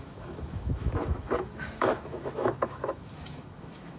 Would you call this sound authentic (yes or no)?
no